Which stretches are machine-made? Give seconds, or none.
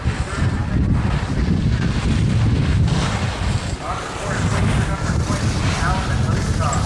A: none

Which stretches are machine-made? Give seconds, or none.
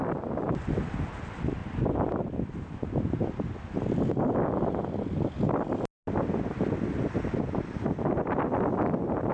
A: none